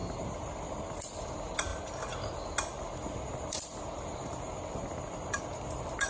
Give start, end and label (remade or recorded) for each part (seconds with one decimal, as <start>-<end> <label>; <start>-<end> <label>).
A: 0.0-0.5 remade; 0.5-6.1 recorded